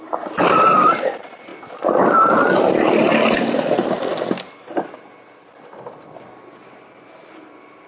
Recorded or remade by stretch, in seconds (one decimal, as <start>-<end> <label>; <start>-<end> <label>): 0.0-7.9 recorded

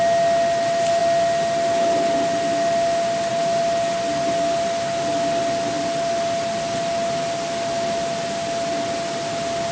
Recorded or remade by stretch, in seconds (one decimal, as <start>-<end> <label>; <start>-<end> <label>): 0.0-9.7 recorded